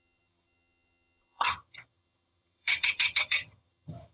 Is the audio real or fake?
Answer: fake